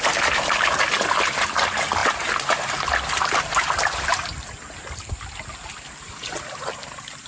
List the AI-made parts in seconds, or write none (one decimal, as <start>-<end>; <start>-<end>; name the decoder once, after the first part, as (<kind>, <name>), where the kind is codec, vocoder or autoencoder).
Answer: none